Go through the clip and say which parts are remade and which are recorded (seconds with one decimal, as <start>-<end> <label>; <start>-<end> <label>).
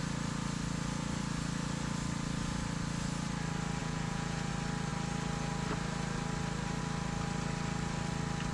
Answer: 0.0-3.8 recorded; 3.8-4.5 remade; 4.5-8.5 recorded